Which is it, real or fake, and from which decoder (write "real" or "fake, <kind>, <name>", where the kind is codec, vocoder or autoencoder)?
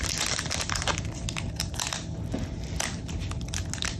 real